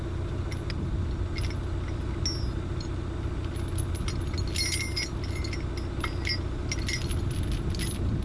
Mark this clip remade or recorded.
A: recorded